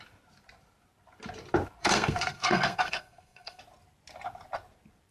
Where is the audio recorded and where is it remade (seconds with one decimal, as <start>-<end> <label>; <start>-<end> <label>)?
0.0-1.8 recorded; 1.8-3.6 remade; 3.6-5.1 recorded